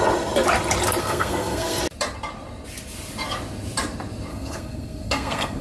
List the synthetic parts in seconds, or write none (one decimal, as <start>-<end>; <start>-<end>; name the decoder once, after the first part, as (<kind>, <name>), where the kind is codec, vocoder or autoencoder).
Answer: 1.0-1.8 (codec, SNAC); 4.3-5.6